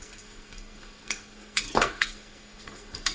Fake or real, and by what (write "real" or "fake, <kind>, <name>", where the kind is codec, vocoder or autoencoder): fake, codec, SNAC